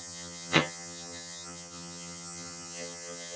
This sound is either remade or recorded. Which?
remade